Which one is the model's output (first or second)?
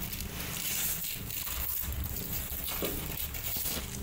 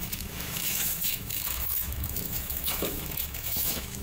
second